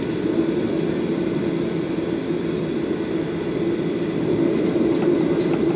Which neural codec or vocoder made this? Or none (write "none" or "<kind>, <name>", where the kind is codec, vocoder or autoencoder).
none